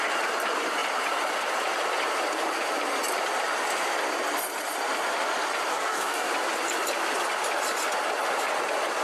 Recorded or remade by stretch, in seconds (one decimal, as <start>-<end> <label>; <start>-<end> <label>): 0.0-5.7 recorded; 5.7-6.3 remade; 6.3-9.0 recorded